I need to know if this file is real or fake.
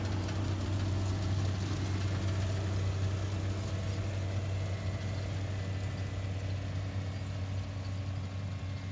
real